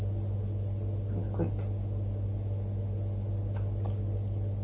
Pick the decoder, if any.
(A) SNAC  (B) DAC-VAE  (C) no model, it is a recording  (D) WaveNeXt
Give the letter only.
C